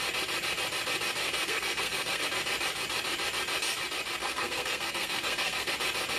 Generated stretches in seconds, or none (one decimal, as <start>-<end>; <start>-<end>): 1.2-2.2; 4.2-5.7